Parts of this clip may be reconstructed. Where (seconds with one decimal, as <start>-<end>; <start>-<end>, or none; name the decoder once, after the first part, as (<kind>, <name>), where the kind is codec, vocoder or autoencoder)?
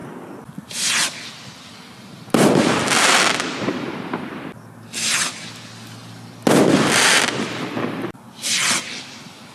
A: none